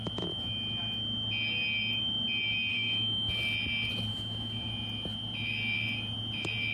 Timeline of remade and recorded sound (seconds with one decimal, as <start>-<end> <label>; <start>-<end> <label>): 0.0-2.7 recorded; 2.7-3.3 remade; 3.3-4.1 recorded; 4.1-4.7 remade; 4.7-6.7 recorded